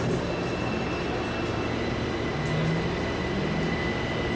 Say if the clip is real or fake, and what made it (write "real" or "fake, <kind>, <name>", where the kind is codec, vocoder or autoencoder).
real